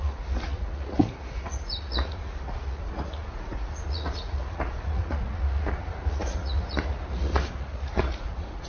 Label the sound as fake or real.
fake